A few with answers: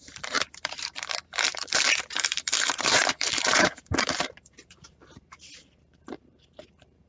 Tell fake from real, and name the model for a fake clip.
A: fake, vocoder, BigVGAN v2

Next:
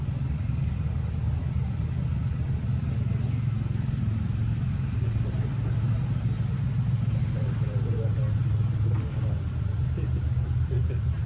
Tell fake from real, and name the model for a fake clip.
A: real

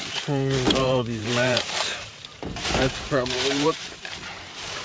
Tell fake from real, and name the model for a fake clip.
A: fake, vocoder, BigVGAN v2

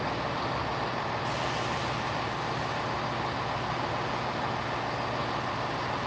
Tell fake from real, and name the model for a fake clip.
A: real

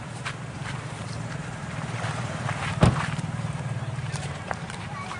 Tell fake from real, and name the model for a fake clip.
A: fake, vocoder, BigVGAN v2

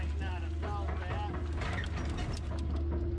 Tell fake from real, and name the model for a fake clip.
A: real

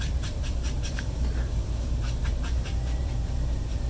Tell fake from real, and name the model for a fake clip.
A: fake, vocoder, BigVGAN v2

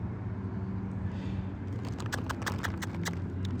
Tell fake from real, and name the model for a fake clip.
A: real